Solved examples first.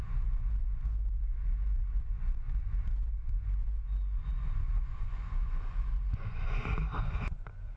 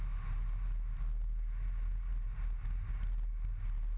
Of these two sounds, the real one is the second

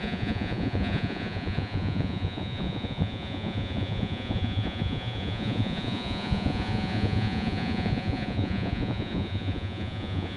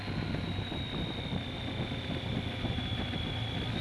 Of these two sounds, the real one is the second